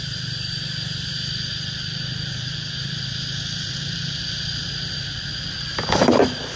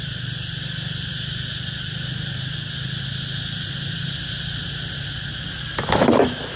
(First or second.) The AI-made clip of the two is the first